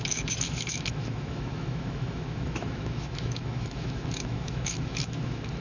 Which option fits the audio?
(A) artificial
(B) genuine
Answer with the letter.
A